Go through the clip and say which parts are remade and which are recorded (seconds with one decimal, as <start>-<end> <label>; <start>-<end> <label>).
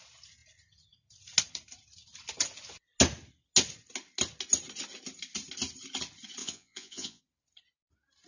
0.0-6.4 recorded; 6.4-7.2 remade; 7.2-8.3 recorded